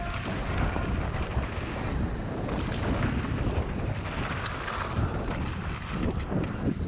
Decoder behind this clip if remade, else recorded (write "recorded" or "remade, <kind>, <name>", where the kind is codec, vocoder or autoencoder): recorded